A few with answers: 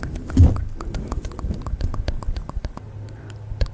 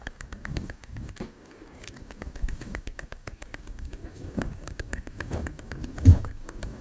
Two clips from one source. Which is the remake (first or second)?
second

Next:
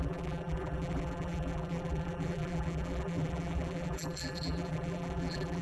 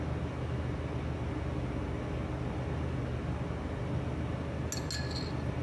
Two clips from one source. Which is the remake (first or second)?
first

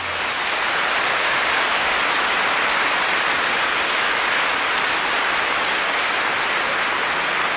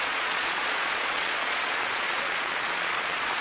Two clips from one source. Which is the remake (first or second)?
second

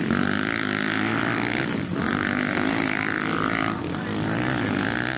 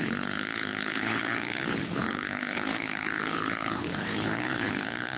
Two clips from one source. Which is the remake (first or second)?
second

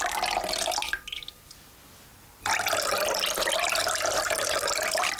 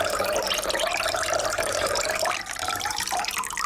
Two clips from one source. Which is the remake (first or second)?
second